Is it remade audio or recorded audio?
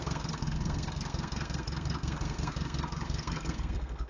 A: remade